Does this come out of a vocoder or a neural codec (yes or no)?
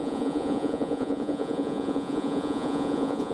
yes